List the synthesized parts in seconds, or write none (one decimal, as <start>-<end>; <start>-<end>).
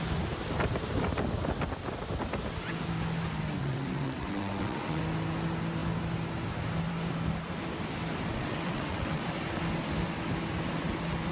3.6-5.0; 8.3-9.2